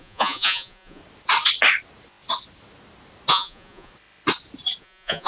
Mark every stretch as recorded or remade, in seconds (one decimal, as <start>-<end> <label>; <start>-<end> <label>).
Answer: 0.0-1.0 remade; 1.0-3.3 recorded; 3.3-3.9 remade; 3.9-4.8 recorded; 4.8-5.3 remade